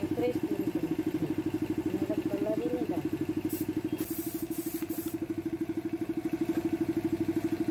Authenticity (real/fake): real